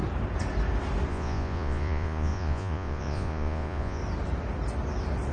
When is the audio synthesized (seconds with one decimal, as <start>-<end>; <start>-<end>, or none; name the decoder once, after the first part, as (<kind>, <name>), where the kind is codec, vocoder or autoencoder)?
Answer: 1.1-4.0 (vocoder, Vocos)